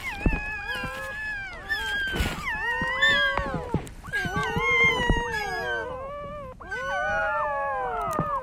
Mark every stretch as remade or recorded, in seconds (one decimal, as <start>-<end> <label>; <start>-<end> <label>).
0.0-8.4 recorded